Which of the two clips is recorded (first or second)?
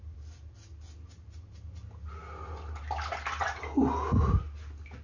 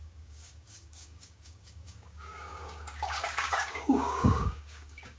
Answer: first